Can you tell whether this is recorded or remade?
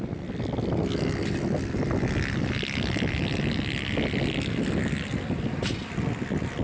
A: recorded